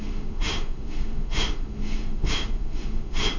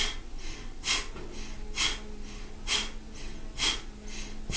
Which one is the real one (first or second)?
second